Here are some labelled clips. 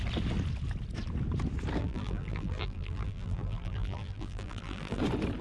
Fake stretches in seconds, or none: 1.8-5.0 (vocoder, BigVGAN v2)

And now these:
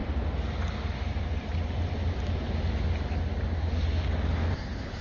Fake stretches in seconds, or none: 1.1-1.5 (vocoder, BigVGAN v2); 4.5-5.0